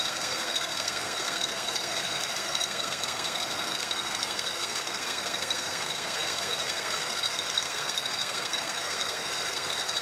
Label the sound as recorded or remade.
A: remade